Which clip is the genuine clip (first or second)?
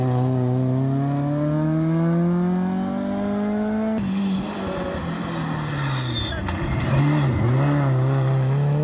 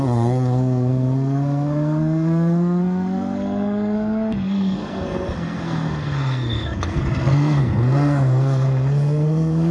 first